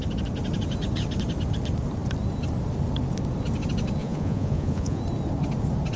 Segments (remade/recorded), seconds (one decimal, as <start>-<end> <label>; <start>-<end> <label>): 0.0-4.0 recorded; 4.0-5.0 remade; 5.0-6.0 recorded